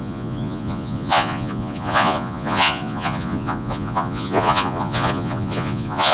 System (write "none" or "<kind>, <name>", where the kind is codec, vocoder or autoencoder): vocoder, Vocos